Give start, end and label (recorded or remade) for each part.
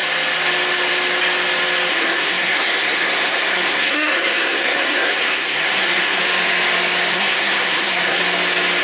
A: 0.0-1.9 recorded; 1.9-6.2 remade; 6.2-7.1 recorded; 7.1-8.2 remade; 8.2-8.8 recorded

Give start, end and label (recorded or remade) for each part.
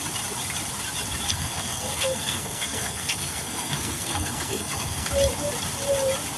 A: 0.0-1.3 recorded; 1.3-5.1 remade; 5.1-6.4 recorded